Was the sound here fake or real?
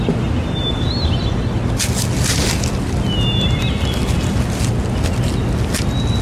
real